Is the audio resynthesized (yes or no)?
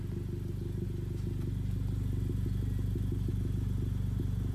no